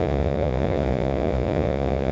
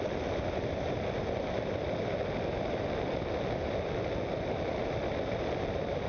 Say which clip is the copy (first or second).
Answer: first